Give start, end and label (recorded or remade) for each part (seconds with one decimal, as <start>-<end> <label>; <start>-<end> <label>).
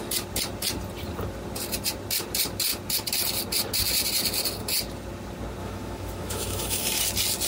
0.0-5.6 recorded; 5.6-7.0 remade; 7.0-7.5 recorded